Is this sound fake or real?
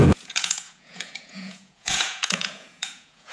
fake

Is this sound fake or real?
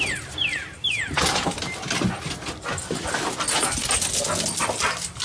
real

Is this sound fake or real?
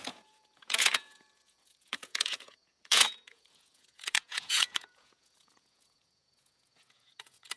fake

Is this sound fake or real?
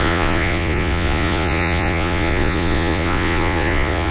fake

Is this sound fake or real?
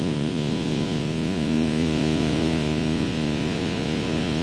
fake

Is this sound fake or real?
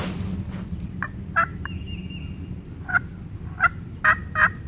real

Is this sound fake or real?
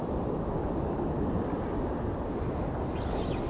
real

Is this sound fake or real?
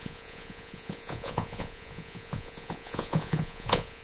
fake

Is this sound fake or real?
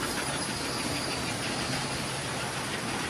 real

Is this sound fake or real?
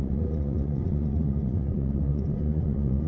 fake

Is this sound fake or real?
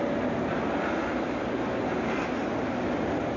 real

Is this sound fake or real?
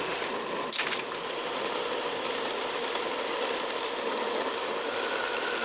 real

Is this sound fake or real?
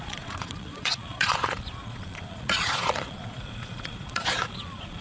fake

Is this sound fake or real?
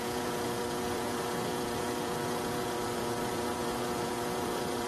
fake